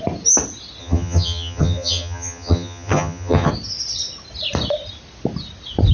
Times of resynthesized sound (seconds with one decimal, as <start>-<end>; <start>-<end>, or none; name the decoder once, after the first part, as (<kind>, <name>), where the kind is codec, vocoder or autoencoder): 0.8-3.5 (vocoder, HiFi-GAN)